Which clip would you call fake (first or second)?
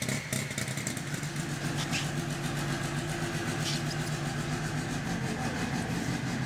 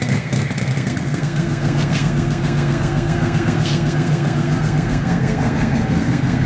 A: second